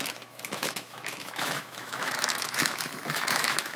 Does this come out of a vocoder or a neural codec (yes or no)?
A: yes